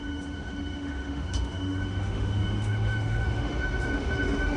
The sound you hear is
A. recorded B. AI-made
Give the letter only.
B